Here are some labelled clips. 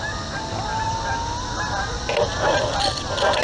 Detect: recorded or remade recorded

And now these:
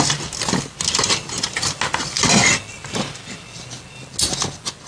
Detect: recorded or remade recorded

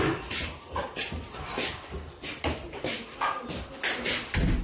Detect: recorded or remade recorded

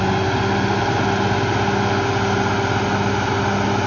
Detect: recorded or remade recorded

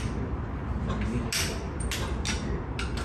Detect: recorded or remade recorded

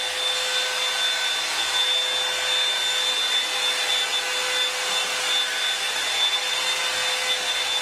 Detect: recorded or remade recorded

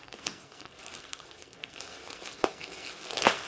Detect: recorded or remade remade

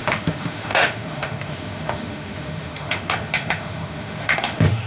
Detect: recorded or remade remade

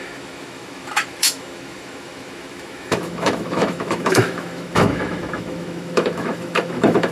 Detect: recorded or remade remade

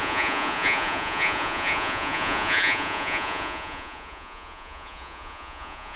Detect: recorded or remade remade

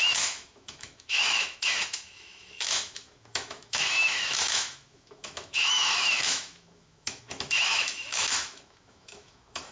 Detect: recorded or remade remade